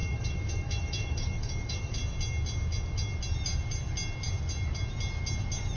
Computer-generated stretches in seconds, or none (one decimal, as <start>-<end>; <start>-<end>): 0.0-2.0